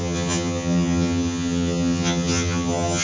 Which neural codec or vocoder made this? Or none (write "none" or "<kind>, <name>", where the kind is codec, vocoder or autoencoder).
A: vocoder, HiFi-GAN